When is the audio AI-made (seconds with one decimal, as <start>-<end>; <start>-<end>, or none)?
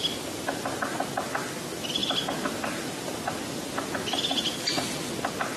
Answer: none